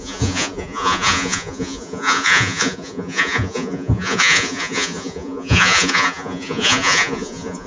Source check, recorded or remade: remade